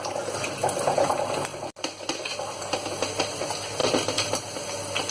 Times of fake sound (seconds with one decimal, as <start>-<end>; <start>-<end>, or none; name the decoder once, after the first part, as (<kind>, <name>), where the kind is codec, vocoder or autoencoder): 1.5-2.6 (vocoder, BigVGAN v2); 3.8-4.6

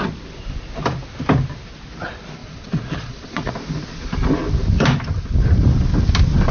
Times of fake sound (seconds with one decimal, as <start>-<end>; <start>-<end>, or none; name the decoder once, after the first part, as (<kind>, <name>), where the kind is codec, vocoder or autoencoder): 2.4-3.5 (vocoder, Vocos)

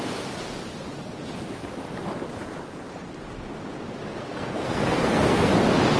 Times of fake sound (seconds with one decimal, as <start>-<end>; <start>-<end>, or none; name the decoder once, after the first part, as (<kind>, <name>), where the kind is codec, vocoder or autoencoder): 4.2-5.5 (codec, SNAC)

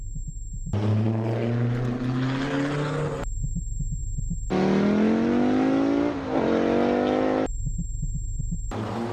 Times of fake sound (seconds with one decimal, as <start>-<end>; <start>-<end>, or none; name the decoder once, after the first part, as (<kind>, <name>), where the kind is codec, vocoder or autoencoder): none

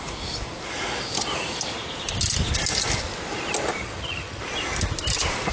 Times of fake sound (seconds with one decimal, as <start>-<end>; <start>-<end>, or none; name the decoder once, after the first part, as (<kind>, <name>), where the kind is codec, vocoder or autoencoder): 3.8-4.4 (vocoder, HiFi-GAN)

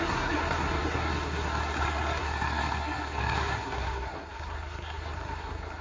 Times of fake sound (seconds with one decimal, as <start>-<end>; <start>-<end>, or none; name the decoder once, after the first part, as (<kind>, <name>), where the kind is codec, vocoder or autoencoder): 0.0-5.8 (codec, SNAC)

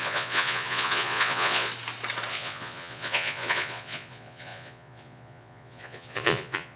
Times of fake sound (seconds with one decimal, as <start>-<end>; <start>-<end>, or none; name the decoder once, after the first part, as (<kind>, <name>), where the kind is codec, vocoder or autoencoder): 0.0-1.7 (vocoder, Vocos); 2.3-6.8

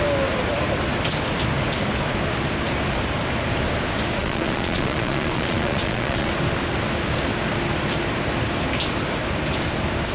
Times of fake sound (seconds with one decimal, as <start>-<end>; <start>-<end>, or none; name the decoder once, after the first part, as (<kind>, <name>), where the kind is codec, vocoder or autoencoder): 4.2-6.3 (vocoder, Vocos)